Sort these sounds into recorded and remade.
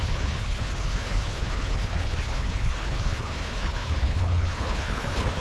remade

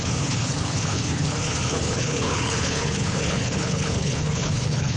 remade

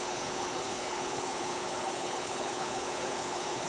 remade